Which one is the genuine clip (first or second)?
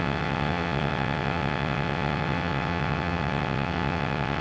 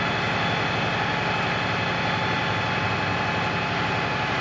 second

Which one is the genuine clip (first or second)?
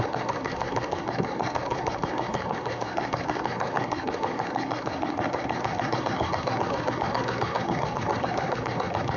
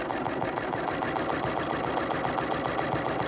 second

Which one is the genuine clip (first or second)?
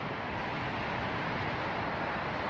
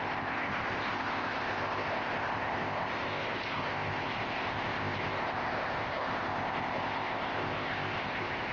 first